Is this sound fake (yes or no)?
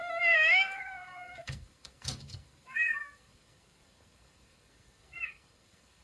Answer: yes